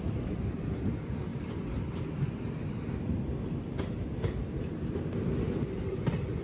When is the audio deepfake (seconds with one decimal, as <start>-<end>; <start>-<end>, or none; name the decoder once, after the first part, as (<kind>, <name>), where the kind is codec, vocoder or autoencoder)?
none

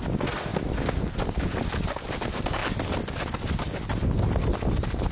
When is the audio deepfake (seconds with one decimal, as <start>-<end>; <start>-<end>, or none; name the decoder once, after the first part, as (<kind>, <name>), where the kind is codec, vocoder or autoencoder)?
none

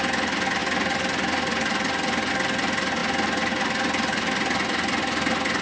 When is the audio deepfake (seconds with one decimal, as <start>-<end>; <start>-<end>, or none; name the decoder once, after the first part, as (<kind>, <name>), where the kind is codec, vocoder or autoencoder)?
none